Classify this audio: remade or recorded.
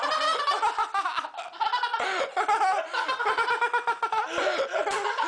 recorded